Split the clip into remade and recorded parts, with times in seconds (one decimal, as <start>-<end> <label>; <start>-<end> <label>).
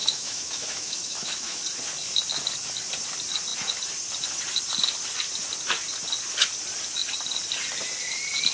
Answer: 0.0-1.6 remade; 1.6-8.5 recorded